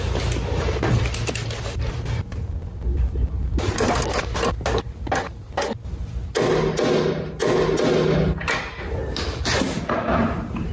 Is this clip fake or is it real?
real